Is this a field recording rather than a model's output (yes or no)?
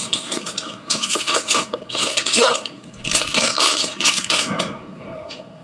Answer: no